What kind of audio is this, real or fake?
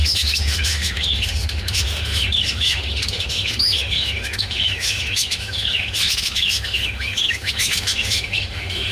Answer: fake